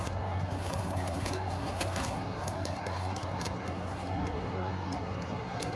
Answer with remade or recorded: remade